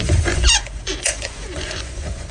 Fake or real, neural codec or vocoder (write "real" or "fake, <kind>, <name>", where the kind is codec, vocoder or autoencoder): fake, vocoder, Vocos